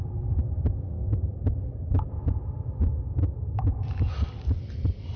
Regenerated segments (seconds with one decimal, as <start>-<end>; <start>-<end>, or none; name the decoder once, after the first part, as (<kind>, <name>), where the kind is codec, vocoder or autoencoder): 1.1-2.1 (vocoder, BigVGAN v2)